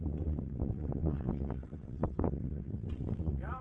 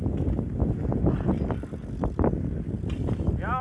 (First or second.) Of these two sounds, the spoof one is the first